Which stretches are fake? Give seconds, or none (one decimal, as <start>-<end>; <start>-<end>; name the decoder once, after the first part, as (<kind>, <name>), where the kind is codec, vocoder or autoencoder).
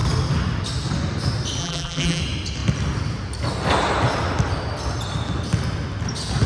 1.6-2.2 (vocoder, BigVGAN v2)